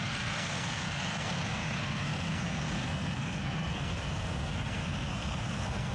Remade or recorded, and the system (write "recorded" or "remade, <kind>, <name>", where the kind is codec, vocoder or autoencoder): remade, codec, SNAC